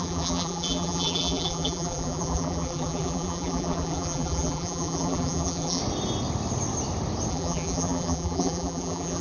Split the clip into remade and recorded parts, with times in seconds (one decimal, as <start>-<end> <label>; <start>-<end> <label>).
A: 0.0-5.8 remade; 5.8-7.3 recorded; 7.3-9.2 remade